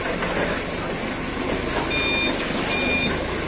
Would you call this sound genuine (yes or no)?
yes